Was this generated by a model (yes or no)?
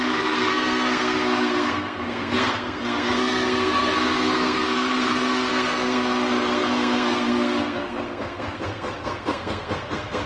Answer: yes